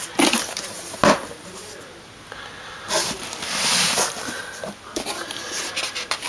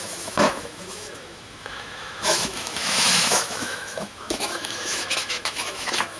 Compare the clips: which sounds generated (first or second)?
second